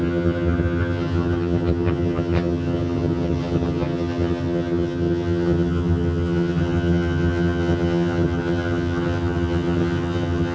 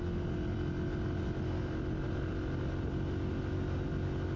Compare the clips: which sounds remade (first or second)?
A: first